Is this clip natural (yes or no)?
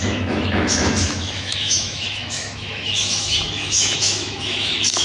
no